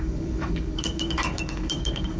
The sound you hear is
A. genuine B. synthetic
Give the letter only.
B